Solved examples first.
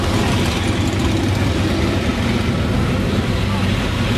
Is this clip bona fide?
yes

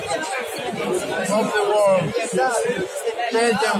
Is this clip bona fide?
yes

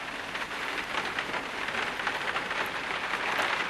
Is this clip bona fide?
yes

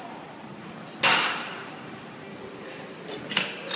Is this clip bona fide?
yes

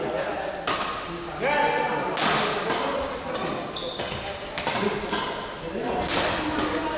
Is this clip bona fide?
yes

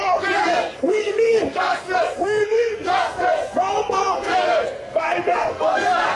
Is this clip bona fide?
no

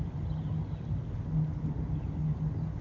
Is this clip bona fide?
yes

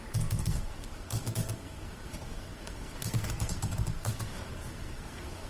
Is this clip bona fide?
no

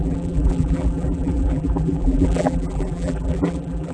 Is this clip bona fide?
no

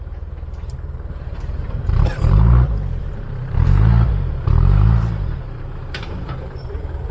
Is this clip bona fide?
no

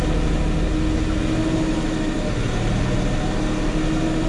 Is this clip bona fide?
yes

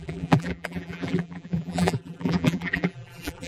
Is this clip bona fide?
no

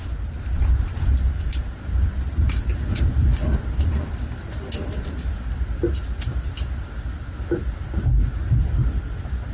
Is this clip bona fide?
yes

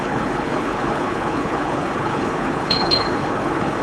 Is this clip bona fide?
no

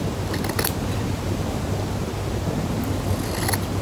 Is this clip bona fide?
yes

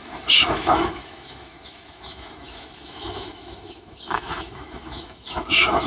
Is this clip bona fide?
no